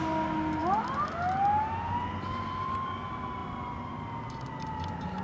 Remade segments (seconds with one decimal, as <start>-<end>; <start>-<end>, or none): none